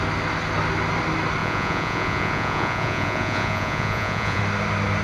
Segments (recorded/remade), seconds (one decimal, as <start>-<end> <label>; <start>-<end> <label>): 0.0-1.4 recorded; 1.4-4.4 remade; 4.4-5.0 recorded